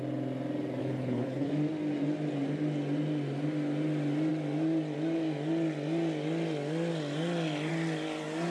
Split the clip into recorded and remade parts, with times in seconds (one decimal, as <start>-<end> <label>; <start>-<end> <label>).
0.0-0.8 recorded; 0.8-1.5 remade; 1.5-8.5 recorded